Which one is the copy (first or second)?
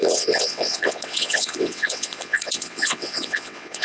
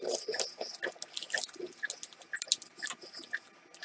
first